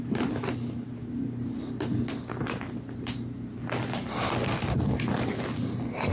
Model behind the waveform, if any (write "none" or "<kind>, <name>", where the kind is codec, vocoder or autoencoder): none